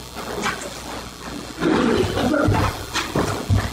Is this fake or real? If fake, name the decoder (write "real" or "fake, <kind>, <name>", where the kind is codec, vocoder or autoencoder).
real